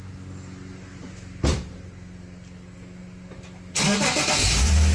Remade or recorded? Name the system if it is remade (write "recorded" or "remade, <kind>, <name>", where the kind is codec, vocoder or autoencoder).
recorded